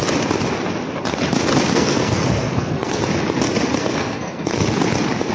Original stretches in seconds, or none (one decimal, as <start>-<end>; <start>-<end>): 0.0-1.7; 3.0-3.8; 4.8-5.3